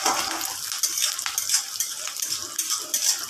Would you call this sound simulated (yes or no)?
no